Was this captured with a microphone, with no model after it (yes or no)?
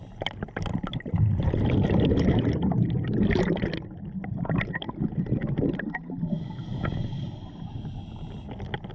yes